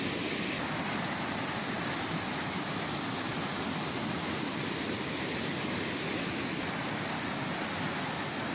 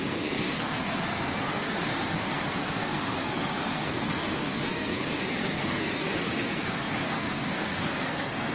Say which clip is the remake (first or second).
second